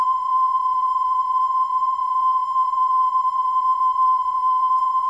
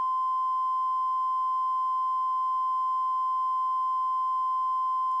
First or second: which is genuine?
second